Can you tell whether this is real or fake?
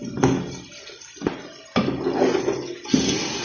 real